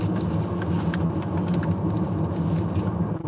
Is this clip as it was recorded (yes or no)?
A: yes